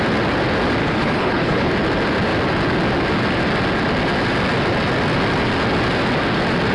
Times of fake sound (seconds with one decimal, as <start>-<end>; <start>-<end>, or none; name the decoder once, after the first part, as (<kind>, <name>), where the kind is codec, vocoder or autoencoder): 0.8-1.7 (codec, HILCodec)